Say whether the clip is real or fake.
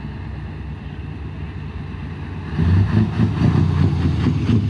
real